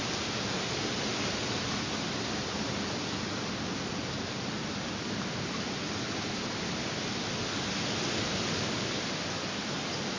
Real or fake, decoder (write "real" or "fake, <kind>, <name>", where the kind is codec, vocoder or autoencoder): real